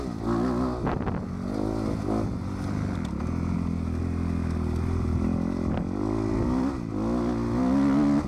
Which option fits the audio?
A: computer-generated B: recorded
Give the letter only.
B